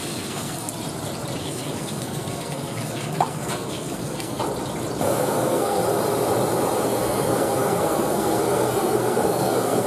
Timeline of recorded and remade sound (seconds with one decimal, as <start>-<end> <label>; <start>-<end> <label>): 0.0-0.7 remade; 0.7-1.4 recorded; 1.4-4.4 remade; 4.4-5.0 recorded; 5.0-5.8 remade; 5.8-6.8 recorded; 6.8-9.9 remade

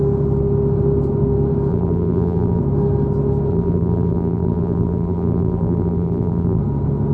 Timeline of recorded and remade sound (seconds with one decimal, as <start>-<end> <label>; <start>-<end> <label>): 0.0-1.7 recorded; 1.7-2.6 remade; 2.6-3.5 recorded; 3.5-6.6 remade; 6.6-7.1 recorded

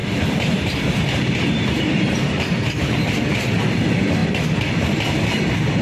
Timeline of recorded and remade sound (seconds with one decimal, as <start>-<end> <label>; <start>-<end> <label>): 0.0-3.5 remade; 3.5-5.8 recorded

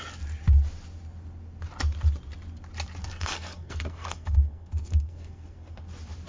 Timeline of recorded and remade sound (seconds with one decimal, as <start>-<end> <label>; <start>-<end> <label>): 0.0-3.0 recorded; 3.0-5.8 remade; 5.8-6.3 recorded

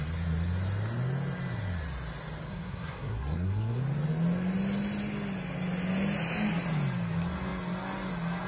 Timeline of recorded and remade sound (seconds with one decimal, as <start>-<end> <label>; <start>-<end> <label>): 0.0-2.5 recorded; 2.5-3.8 remade; 3.8-8.5 recorded